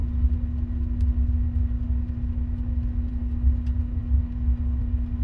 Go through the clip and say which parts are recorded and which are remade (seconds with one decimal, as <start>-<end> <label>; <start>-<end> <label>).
0.0-5.2 recorded